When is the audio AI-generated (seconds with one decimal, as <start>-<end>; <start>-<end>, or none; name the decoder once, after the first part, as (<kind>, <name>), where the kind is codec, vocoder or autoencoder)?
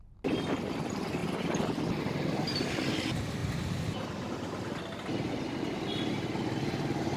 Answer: none